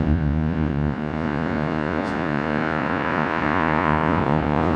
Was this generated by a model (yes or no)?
yes